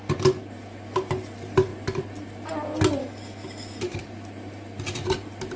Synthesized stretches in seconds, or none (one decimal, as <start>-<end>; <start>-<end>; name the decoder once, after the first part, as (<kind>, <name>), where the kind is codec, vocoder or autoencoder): 3.0-4.0 (autoencoder, DAC-VAE)